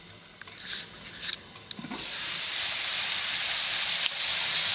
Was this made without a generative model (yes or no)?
no